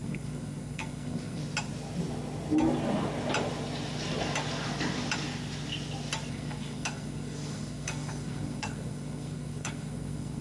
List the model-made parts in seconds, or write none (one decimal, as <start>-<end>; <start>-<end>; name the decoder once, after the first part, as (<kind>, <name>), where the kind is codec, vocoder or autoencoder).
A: 0.0-1.4 (codec, SNAC); 6.3-10.4